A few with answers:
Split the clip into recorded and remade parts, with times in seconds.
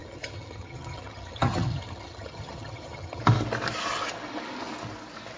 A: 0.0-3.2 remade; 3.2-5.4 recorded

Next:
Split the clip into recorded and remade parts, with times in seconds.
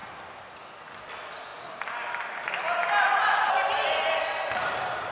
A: 0.0-5.1 recorded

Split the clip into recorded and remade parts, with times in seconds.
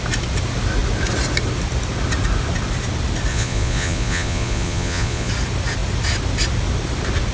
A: 0.0-3.3 recorded; 3.3-5.3 remade; 5.3-7.3 recorded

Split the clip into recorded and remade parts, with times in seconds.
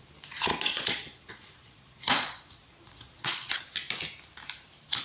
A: 0.0-0.5 recorded; 0.5-3.5 remade; 3.5-5.0 recorded